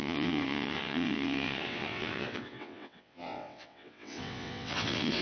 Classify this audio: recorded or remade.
remade